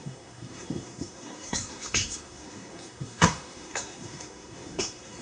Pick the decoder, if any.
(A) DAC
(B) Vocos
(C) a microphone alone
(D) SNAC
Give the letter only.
D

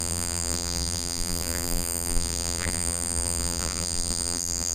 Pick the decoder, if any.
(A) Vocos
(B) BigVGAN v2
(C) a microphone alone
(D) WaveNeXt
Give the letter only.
B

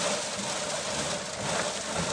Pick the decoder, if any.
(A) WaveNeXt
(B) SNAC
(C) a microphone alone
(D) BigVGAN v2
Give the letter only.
C